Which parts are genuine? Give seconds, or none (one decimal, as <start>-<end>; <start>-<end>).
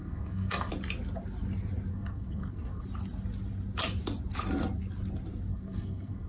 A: 0.7-1.9; 2.8-5.5